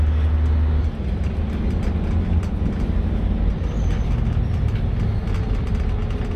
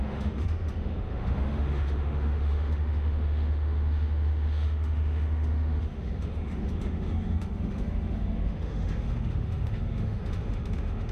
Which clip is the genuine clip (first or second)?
first